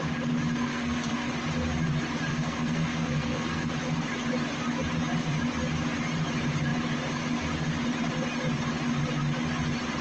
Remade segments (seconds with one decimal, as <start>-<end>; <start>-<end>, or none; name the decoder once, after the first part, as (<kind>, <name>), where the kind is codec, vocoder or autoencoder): 0.5-1.3 (codec, SNAC); 2.3-3.7